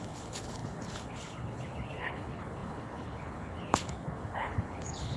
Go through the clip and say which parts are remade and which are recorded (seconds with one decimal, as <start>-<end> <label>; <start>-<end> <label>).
0.0-5.2 remade